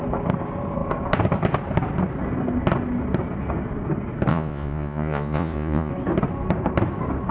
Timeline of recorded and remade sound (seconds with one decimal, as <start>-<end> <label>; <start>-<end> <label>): 0.0-4.3 recorded; 4.3-5.9 remade; 5.9-7.3 recorded